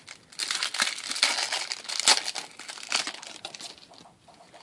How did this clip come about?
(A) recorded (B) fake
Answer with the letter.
A